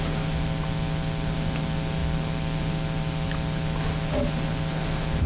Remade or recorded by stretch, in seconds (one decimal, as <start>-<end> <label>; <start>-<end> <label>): 0.0-5.3 recorded